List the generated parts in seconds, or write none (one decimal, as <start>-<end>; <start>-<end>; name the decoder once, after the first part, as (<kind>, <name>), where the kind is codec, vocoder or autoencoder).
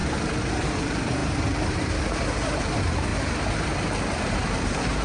0.0-3.1 (vocoder, BigVGAN v2); 4.3-5.0